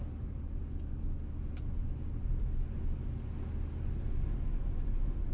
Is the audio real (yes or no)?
yes